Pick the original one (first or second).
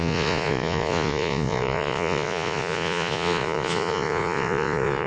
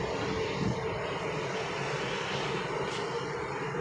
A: second